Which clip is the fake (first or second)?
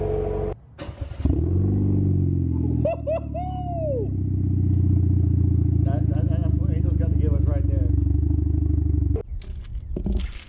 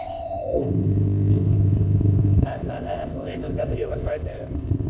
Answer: second